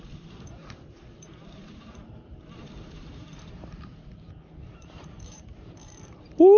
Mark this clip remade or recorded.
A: remade